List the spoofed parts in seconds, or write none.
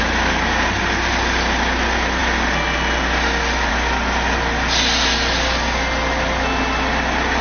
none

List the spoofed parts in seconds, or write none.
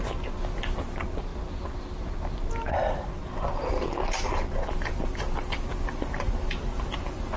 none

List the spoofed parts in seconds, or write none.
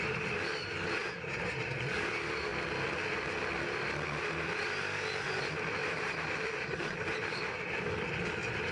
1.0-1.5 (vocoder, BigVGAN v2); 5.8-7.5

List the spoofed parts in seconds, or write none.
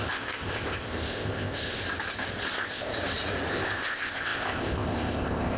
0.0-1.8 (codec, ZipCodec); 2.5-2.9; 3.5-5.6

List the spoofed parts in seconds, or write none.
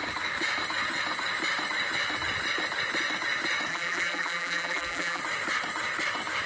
3.7-5.2 (vocoder, BigVGAN v2)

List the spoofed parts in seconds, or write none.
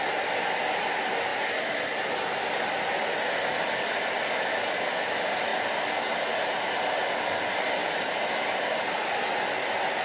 0.0-5.5 (vocoder, BigVGAN v2); 6.9-7.8; 8.8-10.0